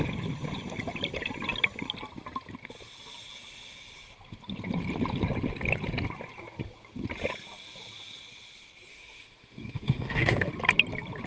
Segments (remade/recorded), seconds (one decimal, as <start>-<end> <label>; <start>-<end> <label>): 0.0-8.9 recorded; 8.9-10.5 remade; 10.5-11.3 recorded